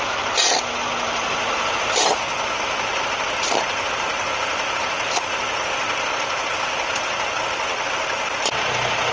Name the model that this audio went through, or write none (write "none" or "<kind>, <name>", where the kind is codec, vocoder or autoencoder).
none